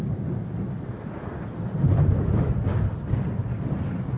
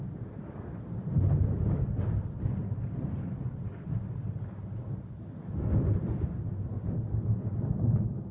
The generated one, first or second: first